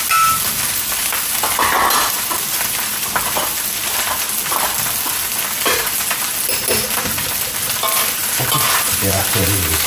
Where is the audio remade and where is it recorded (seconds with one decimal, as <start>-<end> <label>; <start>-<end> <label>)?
0.0-9.9 recorded